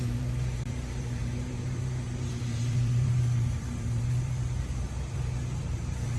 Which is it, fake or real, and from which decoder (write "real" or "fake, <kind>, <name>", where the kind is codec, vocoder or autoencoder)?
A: fake, vocoder, BigVGAN v2